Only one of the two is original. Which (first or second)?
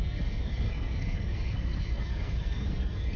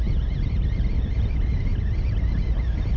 second